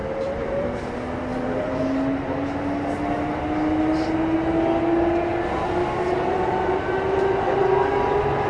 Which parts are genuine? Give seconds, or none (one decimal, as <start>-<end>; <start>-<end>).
0.8-1.3; 1.8-8.5